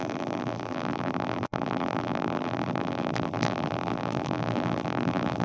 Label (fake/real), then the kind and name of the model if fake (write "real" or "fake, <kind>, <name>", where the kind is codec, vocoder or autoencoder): fake, vocoder, BigVGAN v2